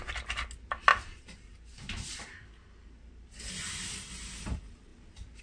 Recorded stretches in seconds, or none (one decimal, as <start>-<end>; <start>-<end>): 0.0-0.9; 4.1-5.4